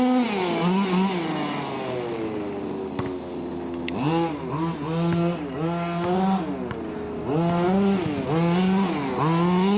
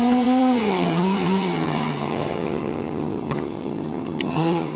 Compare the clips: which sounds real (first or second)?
first